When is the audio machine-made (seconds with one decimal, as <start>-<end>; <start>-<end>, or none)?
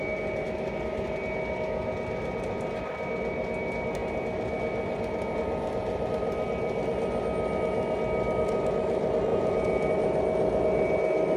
9.3-9.9